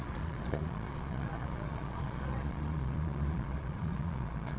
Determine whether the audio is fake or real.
fake